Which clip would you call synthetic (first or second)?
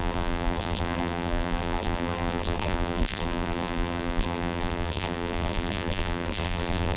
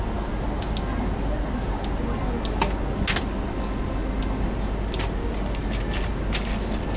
first